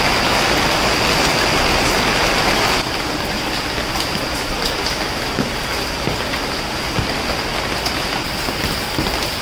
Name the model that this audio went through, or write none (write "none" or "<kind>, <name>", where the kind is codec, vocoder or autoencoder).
none